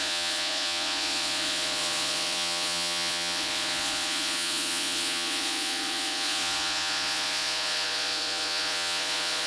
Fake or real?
fake